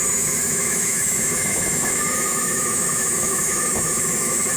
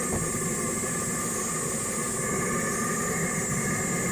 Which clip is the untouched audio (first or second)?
second